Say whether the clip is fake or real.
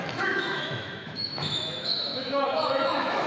fake